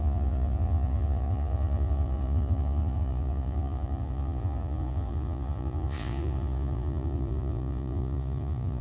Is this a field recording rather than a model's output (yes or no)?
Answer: no